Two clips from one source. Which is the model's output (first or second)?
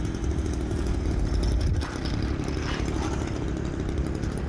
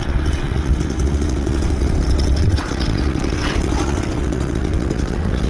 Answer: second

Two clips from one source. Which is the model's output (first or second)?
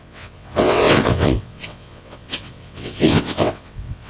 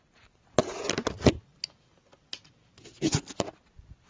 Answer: first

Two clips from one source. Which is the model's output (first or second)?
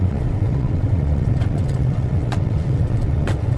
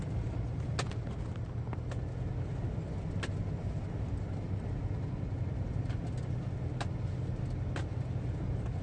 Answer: first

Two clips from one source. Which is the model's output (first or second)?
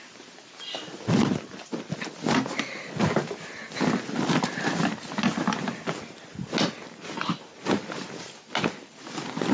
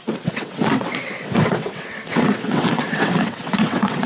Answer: second